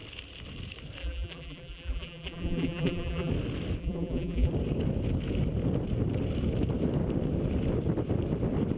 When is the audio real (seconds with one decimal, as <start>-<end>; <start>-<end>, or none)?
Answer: 0.0-1.0; 3.3-3.8; 4.5-8.8